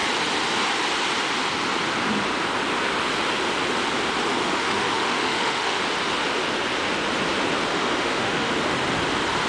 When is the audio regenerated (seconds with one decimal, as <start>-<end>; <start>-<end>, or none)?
4.4-5.8; 7.7-8.5